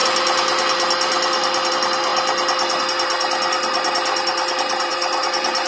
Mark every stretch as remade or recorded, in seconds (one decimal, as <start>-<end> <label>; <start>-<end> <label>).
0.0-4.9 recorded; 4.9-5.7 remade